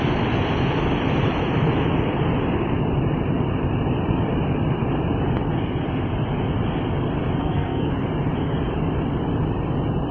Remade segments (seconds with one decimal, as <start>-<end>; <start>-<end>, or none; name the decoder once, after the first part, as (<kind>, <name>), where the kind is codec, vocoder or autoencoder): 7.4-7.9 (codec, SNAC)